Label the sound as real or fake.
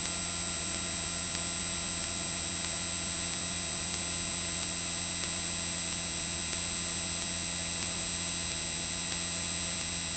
real